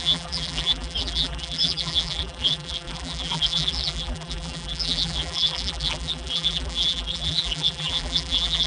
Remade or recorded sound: remade